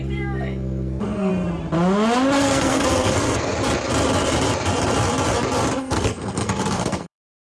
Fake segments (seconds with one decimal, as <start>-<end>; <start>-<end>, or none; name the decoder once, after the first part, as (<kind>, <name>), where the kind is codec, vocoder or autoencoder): 0.0-1.3 (codec, SNAC); 2.4-3.5; 5.8-7.6